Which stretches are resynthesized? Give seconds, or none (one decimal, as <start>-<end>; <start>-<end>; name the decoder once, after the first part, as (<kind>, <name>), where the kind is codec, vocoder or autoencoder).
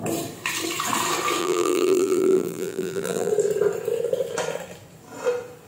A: 1.4-3.3 (vocoder, BigVGAN v2)